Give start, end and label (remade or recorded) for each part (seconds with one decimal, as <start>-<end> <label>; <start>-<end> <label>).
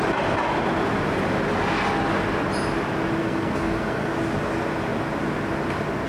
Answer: 0.0-3.2 recorded; 3.2-4.1 remade; 4.1-6.1 recorded